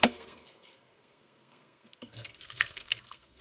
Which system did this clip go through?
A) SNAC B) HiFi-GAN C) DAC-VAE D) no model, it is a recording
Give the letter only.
A